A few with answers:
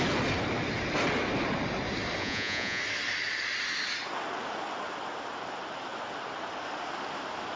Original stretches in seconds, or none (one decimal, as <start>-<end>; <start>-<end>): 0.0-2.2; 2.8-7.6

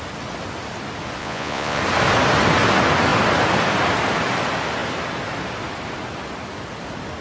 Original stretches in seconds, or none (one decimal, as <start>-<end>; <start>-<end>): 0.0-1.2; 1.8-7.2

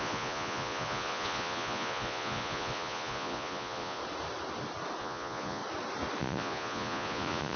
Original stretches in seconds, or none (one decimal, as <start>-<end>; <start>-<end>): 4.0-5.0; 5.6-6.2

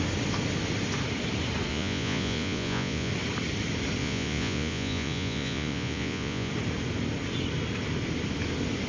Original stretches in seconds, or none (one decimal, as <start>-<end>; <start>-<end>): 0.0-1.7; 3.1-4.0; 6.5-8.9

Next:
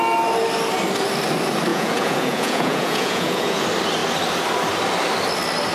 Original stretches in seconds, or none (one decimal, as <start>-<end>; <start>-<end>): 0.0-1.7; 3.6-5.7